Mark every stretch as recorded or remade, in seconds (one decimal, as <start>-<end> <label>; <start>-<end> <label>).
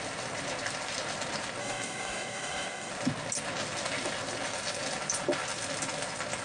0.0-1.6 recorded; 1.6-2.9 remade; 2.9-6.4 recorded